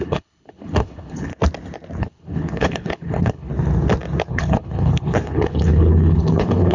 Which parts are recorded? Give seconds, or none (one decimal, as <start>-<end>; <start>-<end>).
1.3-2.0; 3.5-4.3